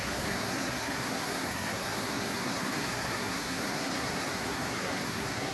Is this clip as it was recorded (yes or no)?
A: no